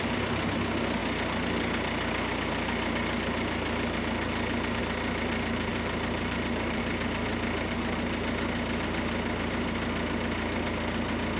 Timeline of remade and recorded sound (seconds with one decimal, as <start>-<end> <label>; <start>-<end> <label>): 0.0-5.7 recorded; 5.7-6.8 remade; 6.8-11.4 recorded

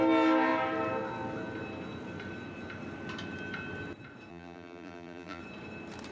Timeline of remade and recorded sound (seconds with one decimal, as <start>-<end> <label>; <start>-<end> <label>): 0.0-4.3 recorded; 4.3-5.4 remade; 5.4-6.1 recorded

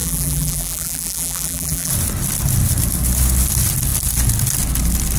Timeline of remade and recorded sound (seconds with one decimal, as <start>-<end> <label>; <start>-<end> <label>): 0.0-1.9 remade; 1.9-5.2 recorded

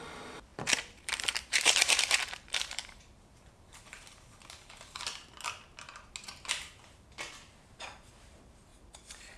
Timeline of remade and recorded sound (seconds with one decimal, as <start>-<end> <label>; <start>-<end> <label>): 0.0-0.5 recorded; 0.5-5.0 remade; 5.0-8.7 recorded; 8.7-9.4 remade

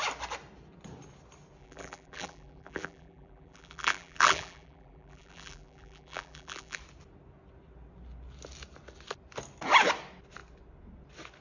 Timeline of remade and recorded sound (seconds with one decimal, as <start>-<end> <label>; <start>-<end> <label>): 0.0-1.6 recorded; 1.6-6.8 remade; 6.8-11.4 recorded

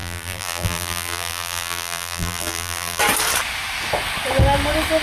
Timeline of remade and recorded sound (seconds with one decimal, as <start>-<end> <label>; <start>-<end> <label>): 0.0-3.0 remade; 3.0-5.0 recorded

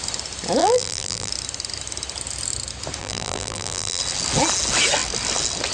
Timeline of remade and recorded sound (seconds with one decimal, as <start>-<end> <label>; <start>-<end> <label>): 0.0-0.6 recorded; 0.6-1.3 remade; 1.3-3.0 recorded; 3.0-4.0 remade; 4.0-5.7 recorded